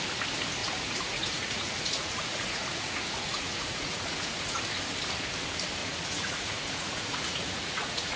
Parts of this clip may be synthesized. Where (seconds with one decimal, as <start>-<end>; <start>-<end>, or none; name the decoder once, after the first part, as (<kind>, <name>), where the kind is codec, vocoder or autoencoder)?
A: 0.6-4.6 (vocoder, Vocos); 5.8-8.2